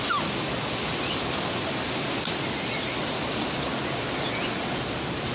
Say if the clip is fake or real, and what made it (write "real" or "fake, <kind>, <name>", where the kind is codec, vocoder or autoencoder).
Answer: real